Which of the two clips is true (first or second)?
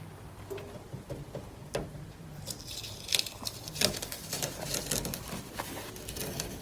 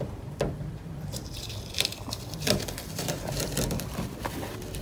first